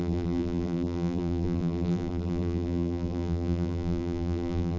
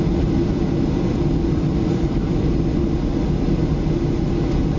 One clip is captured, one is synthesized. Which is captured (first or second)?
second